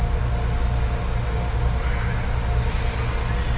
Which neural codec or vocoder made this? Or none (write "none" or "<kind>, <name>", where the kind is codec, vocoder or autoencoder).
none